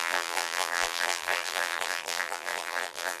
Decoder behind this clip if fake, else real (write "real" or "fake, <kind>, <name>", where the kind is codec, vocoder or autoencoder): fake, vocoder, BigVGAN v2